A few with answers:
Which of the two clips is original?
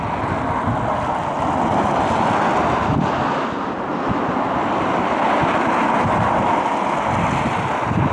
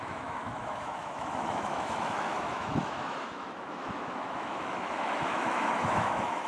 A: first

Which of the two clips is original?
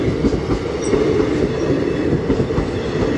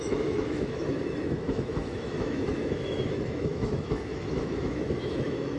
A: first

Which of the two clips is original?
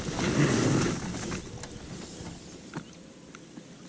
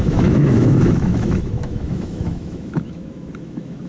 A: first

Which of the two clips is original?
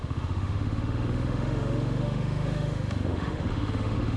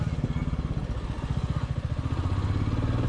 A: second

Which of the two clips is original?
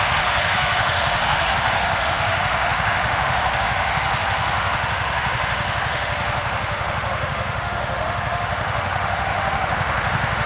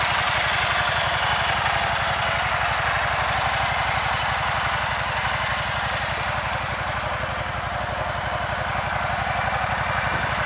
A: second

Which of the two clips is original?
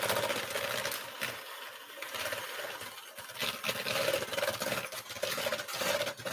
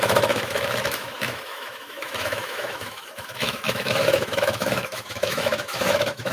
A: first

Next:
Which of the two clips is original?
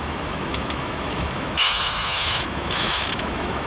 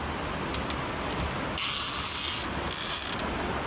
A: second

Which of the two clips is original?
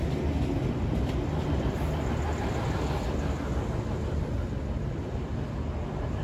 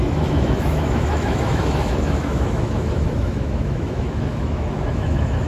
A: first